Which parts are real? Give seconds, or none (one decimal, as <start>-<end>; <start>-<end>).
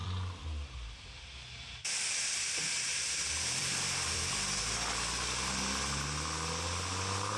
4.4-7.4